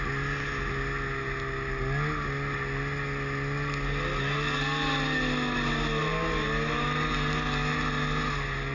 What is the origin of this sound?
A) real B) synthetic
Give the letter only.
A